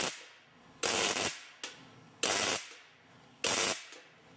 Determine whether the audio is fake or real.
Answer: real